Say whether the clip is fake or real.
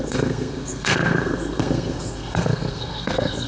fake